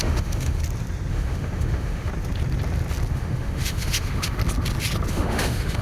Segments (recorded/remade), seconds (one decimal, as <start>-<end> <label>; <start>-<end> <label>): 0.0-0.6 remade; 0.6-1.1 recorded; 1.1-2.1 remade; 2.1-3.1 recorded; 3.1-4.4 remade; 4.4-5.1 recorded; 5.1-5.8 remade

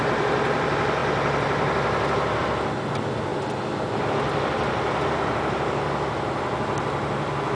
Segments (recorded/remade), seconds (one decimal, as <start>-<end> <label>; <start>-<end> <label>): 0.0-7.5 recorded

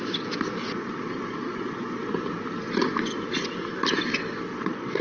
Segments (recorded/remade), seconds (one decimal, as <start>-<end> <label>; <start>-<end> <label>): 0.0-0.6 recorded; 0.6-2.0 remade; 2.0-4.5 recorded; 4.5-5.0 remade

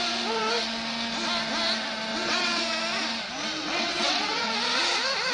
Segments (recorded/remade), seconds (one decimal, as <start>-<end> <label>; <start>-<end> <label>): 0.0-2.1 recorded; 2.1-2.6 remade; 2.6-3.6 recorded; 3.6-4.5 remade; 4.5-5.3 recorded

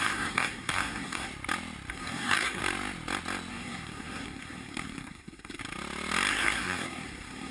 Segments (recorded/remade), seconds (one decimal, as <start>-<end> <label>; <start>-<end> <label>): 0.0-1.3 remade; 1.3-1.9 recorded; 1.9-2.6 remade; 2.6-3.5 recorded; 3.5-5.6 remade; 5.6-6.3 recorded; 6.3-7.5 remade

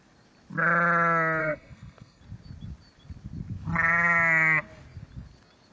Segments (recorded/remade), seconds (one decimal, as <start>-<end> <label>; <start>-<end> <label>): 0.0-1.4 recorded; 1.4-2.2 remade; 2.2-5.7 recorded

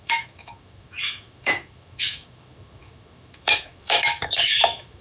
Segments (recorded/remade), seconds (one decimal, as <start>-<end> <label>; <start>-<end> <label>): 0.0-5.0 remade